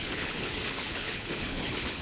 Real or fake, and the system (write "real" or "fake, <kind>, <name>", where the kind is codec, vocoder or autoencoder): fake, codec, HILCodec